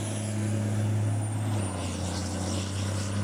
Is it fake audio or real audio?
real